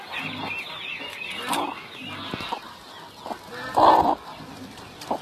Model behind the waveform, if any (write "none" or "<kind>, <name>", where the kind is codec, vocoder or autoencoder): none